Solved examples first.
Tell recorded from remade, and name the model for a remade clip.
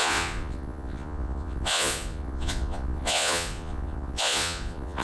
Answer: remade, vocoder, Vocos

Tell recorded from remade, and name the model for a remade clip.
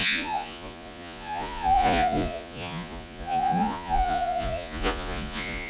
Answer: remade, vocoder, Vocos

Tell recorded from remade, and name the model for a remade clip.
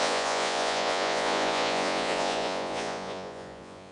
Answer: remade, vocoder, Vocos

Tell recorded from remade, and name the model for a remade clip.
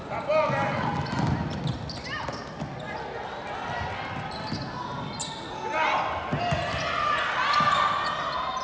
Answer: recorded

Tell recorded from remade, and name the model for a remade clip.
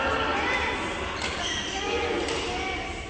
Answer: recorded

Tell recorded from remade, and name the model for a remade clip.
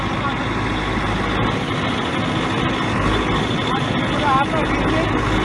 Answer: recorded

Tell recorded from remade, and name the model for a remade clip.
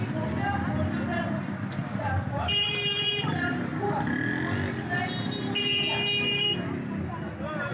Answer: recorded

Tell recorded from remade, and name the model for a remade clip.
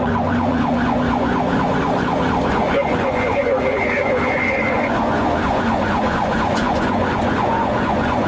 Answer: remade, vocoder, Vocos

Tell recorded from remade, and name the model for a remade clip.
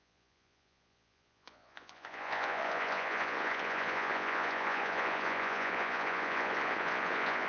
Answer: remade, vocoder, Vocos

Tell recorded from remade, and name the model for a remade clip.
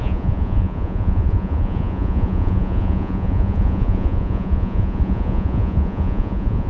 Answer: remade, vocoder, Vocos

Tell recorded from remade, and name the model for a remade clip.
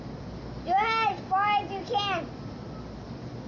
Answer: recorded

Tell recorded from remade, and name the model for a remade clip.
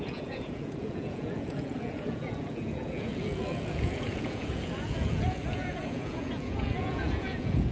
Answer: remade, vocoder, Vocos